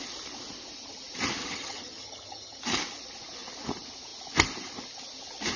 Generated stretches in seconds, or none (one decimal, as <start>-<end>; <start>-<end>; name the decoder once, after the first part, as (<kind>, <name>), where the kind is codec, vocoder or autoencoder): 1.4-2.6 (vocoder, HiFi-GAN)